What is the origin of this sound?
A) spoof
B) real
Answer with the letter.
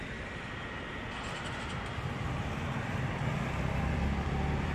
A